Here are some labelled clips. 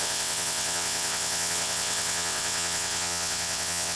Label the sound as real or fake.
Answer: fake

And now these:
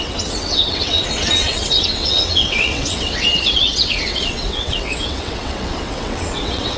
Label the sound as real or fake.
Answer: fake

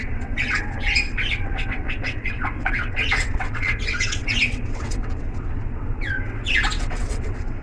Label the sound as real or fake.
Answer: fake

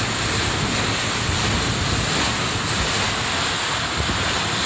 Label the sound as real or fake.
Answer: real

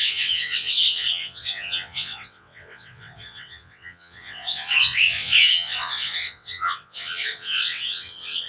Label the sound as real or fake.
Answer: fake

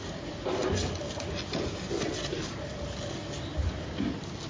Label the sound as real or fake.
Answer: real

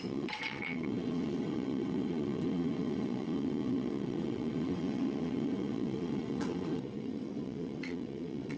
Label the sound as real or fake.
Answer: fake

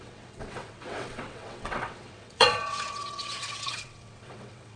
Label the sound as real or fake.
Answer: fake